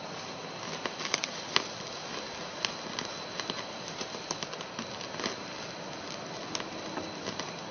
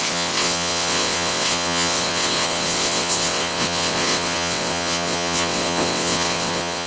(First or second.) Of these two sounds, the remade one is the second